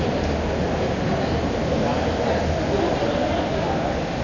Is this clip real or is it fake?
real